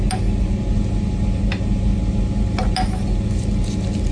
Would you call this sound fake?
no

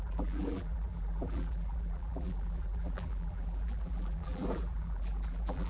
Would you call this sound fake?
yes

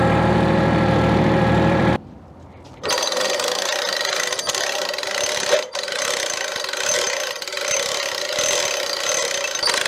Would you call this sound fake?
yes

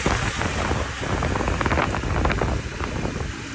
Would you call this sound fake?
no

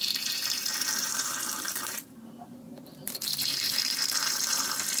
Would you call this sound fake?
yes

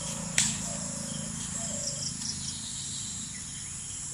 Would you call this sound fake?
yes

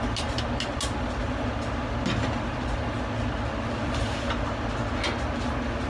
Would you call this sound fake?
no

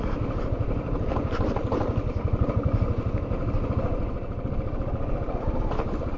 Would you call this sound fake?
yes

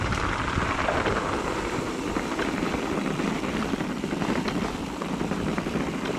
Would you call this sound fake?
yes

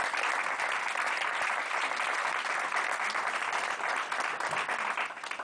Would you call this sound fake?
no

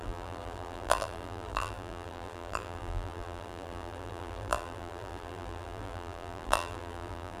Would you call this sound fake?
yes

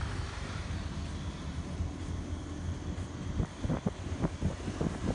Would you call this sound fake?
yes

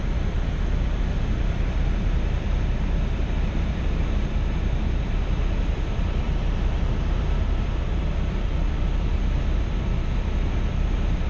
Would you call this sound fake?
yes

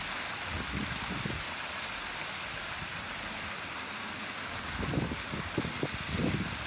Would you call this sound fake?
no